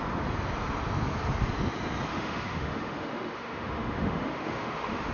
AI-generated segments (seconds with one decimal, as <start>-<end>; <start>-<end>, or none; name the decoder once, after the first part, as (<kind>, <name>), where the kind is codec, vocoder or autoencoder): 2.1-5.1 (autoencoder, DAC-VAE)